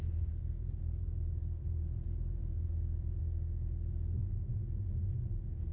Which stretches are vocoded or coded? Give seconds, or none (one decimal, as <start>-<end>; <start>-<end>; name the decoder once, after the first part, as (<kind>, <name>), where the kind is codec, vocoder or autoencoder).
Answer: 0.4-3.2 (vocoder, BigVGAN v2)